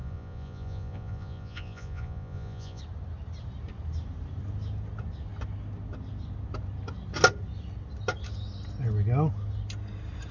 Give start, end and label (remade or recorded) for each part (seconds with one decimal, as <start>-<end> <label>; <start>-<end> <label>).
0.0-2.8 remade; 2.8-10.3 recorded